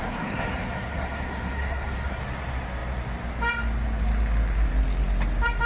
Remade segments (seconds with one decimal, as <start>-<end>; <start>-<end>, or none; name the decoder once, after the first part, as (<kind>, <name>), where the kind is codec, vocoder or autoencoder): 0.0-2.2 (codec, SNAC)